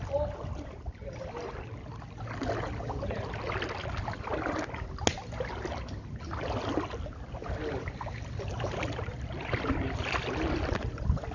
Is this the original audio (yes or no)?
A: yes